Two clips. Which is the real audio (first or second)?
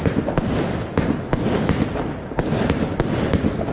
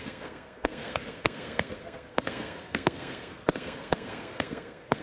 first